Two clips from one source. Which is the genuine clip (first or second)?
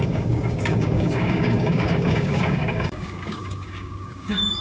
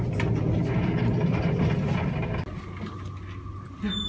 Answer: second